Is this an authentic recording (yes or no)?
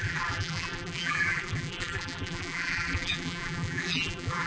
no